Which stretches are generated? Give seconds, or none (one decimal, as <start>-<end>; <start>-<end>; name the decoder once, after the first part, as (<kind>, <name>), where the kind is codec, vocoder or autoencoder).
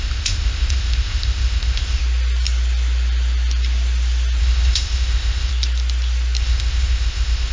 0.0-2.0 (codec, ZipCodec); 4.4-5.5; 6.4-7.5